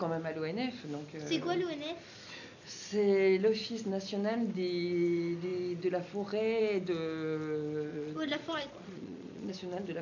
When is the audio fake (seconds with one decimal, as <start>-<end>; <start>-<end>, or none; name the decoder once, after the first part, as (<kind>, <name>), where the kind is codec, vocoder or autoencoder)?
7.9-9.5 (vocoder, Vocos)